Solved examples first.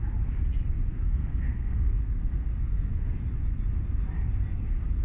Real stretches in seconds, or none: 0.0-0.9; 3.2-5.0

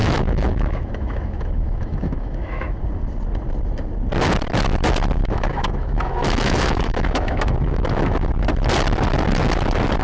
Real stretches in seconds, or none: 2.8-5.2; 8.3-10.0

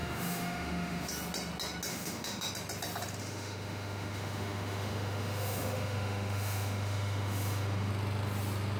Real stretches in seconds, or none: 1.1-1.9; 2.5-3.2; 7.9-8.8

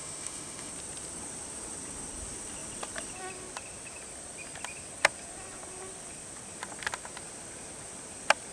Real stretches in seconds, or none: 0.7-8.5